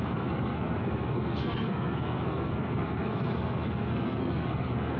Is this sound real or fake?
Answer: fake